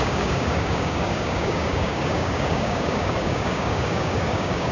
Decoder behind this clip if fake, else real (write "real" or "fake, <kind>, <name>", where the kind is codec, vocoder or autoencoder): fake, codec, DAC